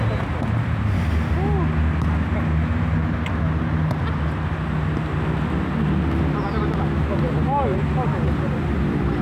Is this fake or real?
real